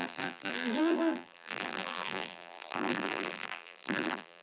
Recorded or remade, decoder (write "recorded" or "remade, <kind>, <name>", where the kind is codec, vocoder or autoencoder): remade, vocoder, BigVGAN v2